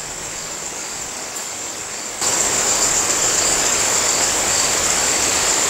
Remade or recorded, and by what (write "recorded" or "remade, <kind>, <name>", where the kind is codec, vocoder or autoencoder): remade, codec, DAC